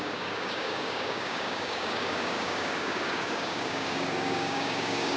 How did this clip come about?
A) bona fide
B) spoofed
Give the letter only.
B